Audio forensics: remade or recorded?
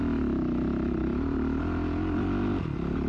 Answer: recorded